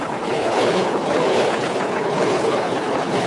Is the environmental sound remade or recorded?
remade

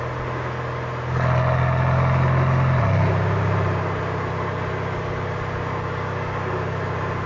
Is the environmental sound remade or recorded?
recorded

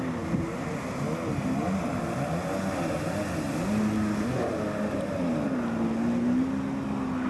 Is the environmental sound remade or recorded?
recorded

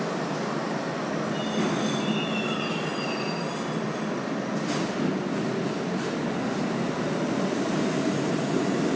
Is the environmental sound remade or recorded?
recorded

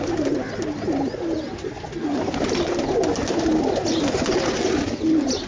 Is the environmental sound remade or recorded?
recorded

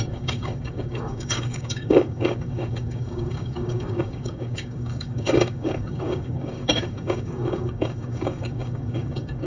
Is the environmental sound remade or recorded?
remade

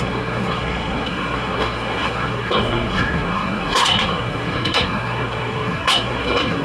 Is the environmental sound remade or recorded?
remade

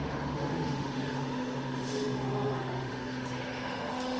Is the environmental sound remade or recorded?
remade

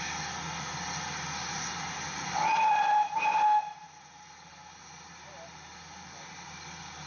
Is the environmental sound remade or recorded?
recorded